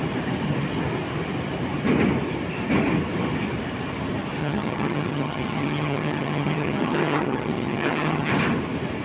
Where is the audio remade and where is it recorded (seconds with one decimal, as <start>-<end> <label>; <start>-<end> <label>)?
0.0-4.4 recorded; 4.4-8.3 remade; 8.3-9.0 recorded